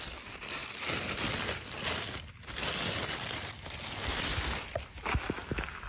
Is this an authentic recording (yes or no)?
yes